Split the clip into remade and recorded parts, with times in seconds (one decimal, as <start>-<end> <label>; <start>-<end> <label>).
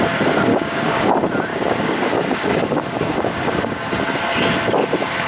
0.0-0.5 recorded; 0.5-1.1 remade; 1.1-1.5 recorded; 1.5-3.9 remade; 3.9-5.3 recorded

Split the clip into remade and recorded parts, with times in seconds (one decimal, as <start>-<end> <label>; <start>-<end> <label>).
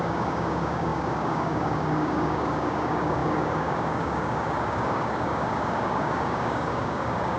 0.0-7.4 remade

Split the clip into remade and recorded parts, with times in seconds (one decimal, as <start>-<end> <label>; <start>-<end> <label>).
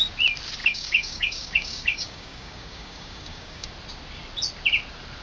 0.0-0.6 recorded; 0.6-3.7 remade; 3.7-5.2 recorded